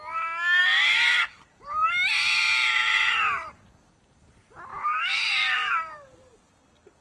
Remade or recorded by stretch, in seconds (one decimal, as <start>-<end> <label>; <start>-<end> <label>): 0.0-0.6 recorded; 0.6-1.4 remade; 1.4-4.7 recorded; 4.7-6.5 remade; 6.5-7.0 recorded